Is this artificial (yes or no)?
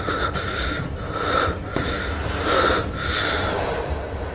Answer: no